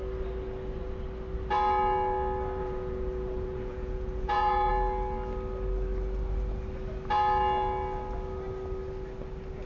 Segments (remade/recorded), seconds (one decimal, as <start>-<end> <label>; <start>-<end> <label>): 0.0-2.6 recorded; 2.6-4.7 remade; 4.7-9.7 recorded

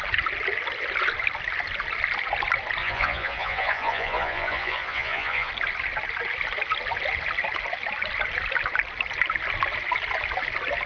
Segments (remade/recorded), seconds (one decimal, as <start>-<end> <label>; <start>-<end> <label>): 0.0-2.8 recorded; 2.8-5.5 remade; 5.5-10.9 recorded

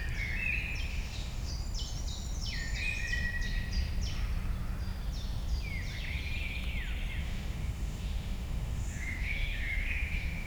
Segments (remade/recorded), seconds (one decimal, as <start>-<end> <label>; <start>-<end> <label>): 0.0-0.9 recorded; 0.9-1.5 remade; 1.5-7.2 recorded; 7.2-10.5 remade

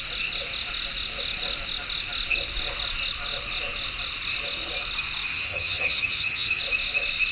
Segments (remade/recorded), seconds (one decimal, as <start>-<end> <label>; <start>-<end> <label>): 0.0-5.3 recorded; 5.3-6.6 remade; 6.6-7.3 recorded

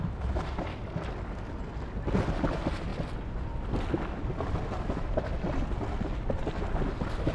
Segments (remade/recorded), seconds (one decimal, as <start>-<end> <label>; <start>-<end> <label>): 0.0-7.3 recorded